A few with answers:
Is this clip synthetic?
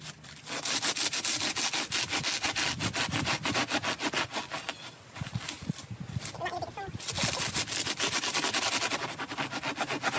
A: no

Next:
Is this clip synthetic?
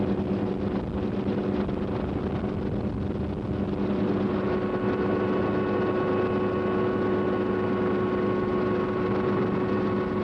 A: no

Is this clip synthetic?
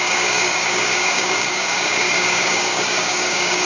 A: yes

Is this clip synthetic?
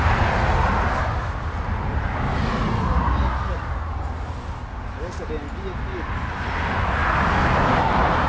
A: no